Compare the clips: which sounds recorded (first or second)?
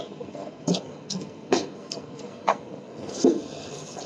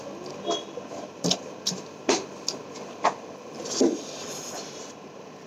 second